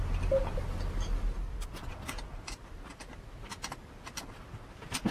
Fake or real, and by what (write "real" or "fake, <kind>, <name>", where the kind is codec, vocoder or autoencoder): real